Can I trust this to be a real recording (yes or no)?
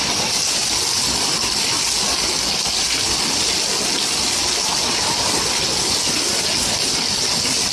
yes